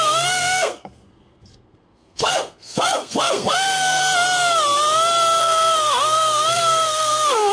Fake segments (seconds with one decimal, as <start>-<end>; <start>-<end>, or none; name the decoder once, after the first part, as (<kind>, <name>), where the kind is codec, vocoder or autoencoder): 0.0-4.0 (codec, SNAC); 5.4-7.5